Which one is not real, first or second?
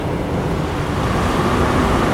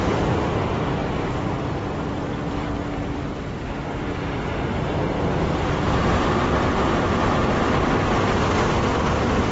second